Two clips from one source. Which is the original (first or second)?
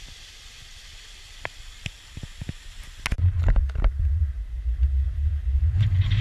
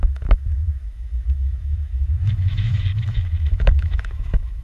first